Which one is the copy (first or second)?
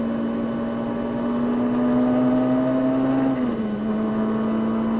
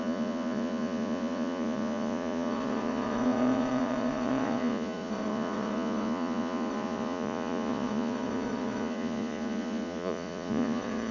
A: second